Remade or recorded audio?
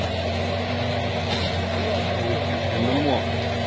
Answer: recorded